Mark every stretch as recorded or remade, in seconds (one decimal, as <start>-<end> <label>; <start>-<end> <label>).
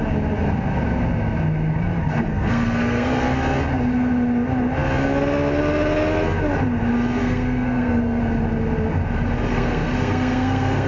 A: 0.0-2.3 recorded; 2.3-3.1 remade; 3.1-7.2 recorded; 7.2-8.2 remade; 8.2-9.5 recorded; 9.5-10.9 remade